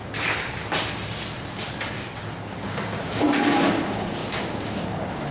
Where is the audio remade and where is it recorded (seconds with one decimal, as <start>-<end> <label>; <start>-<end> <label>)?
0.0-2.4 recorded; 2.4-5.3 remade